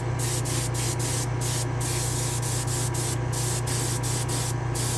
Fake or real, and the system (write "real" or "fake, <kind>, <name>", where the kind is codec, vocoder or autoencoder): real